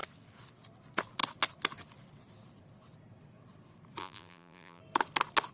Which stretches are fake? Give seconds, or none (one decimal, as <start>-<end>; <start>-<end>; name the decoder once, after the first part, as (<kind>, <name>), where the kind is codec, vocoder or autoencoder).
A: 4.0-4.8 (vocoder, BigVGAN v2)